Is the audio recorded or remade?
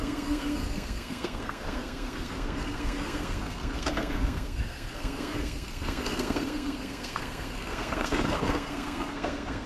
remade